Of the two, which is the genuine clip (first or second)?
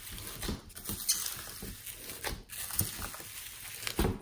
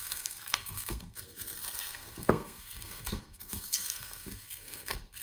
first